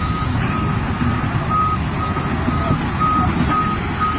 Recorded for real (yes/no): yes